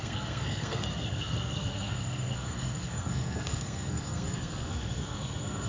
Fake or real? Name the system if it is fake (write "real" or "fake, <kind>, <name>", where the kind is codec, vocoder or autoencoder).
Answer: fake, codec, SNAC